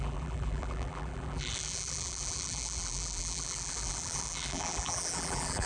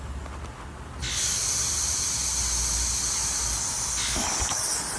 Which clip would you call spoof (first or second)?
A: first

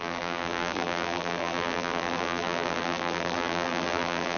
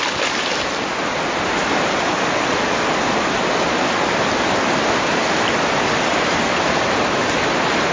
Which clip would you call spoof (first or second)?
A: first